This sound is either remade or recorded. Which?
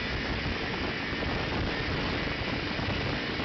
recorded